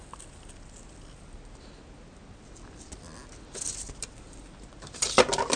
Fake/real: real